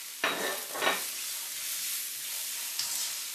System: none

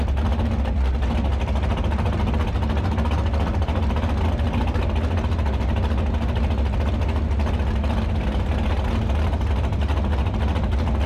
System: none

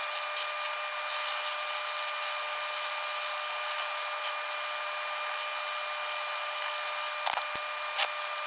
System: none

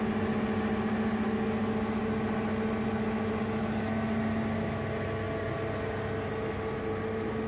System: none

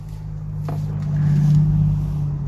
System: none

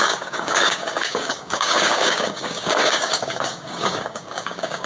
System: codec, DAC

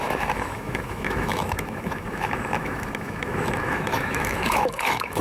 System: autoencoder, DAC-VAE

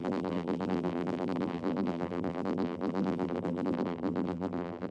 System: vocoder, BigVGAN v2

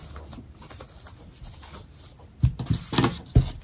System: none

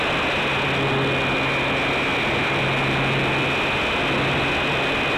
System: none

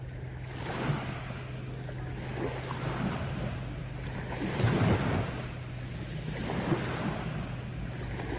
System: none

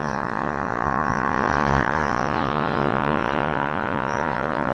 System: vocoder, Vocos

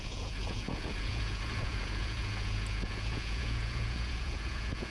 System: vocoder, Vocos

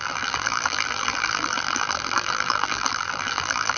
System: vocoder, BigVGAN v2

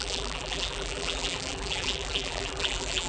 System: vocoder, BigVGAN v2